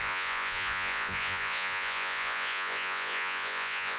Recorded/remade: remade